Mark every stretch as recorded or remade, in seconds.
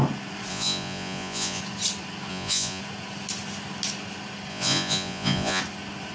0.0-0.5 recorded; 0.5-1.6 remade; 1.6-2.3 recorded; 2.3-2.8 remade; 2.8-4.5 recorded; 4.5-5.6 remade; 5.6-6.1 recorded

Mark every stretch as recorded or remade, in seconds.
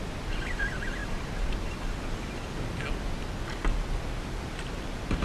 0.0-5.2 recorded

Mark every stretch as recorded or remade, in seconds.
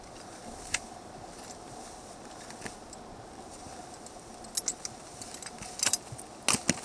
0.0-6.8 recorded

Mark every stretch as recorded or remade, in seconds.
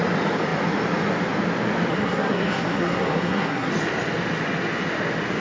0.0-1.9 recorded; 1.9-3.7 remade; 3.7-5.4 recorded